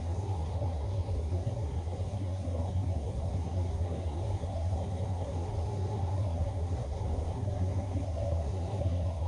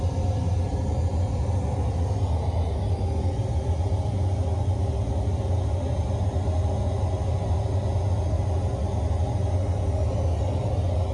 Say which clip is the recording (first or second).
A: second